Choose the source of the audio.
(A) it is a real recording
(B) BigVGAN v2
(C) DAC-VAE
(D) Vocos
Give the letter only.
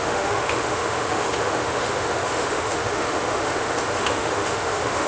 C